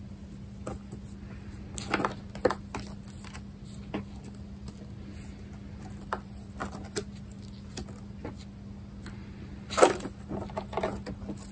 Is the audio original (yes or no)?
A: yes